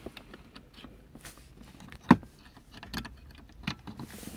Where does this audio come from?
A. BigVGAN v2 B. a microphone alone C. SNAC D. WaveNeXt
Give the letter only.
B